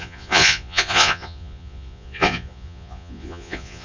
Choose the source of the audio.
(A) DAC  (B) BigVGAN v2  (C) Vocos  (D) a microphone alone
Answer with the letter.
C